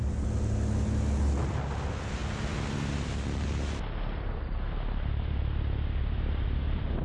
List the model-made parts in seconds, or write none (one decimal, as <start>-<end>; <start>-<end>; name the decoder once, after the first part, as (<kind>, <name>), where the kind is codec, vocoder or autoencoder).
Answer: none